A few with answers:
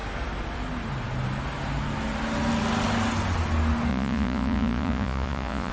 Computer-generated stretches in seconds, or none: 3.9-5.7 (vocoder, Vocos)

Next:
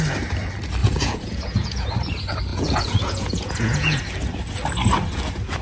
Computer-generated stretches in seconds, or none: 0.8-1.9 (vocoder, Vocos); 2.5-4.0

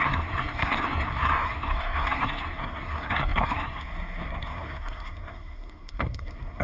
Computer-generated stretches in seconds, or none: 0.0-6.6 (codec, SNAC)

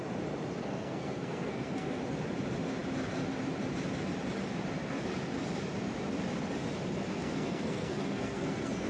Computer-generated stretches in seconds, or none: 0.6-2.0 (codec, SNAC); 7.2-8.9

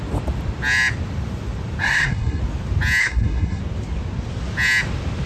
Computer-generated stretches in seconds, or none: 1.8-2.4 (codec, SNAC); 3.0-3.6

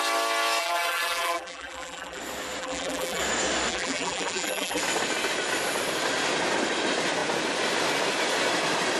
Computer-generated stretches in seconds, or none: 0.6-2.2 (vocoder, BigVGAN v2); 2.6-3.2; 3.7-4.8

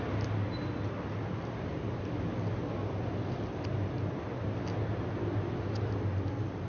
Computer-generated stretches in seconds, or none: none

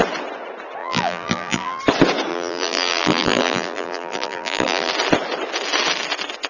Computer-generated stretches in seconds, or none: 0.8-1.8 (vocoder, BigVGAN v2); 2.3-4.9